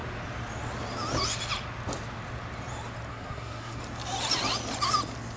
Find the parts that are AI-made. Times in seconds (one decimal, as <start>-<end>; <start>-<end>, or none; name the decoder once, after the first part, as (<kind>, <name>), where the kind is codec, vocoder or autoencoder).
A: 3.1-3.8 (codec, SNAC)